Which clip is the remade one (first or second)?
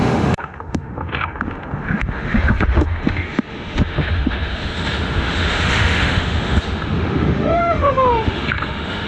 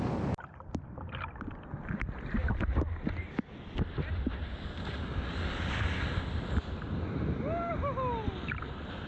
first